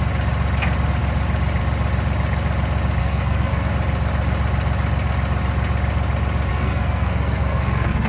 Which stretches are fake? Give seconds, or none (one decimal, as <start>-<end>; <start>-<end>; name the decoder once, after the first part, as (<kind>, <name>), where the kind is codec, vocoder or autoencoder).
3.0-3.7 (codec, SNAC); 6.5-8.1